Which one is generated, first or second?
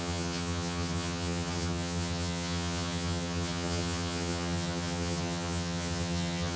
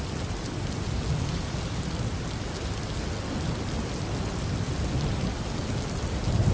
first